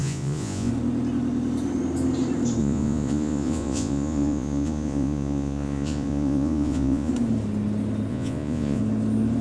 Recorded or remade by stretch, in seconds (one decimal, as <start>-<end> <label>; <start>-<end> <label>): 0.0-0.7 remade; 0.7-2.6 recorded; 2.6-7.1 remade; 7.1-8.1 recorded; 8.1-8.8 remade; 8.8-9.4 recorded